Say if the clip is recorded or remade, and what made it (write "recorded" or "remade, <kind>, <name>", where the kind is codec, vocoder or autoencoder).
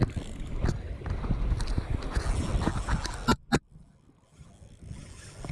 recorded